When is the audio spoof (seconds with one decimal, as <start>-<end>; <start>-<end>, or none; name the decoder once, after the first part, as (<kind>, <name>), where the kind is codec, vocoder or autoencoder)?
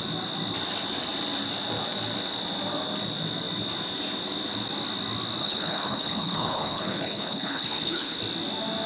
5.4-8.2 (codec, HILCodec)